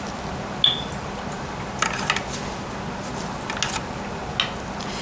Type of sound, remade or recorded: recorded